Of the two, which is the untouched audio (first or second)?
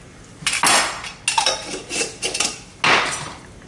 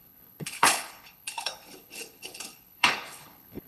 first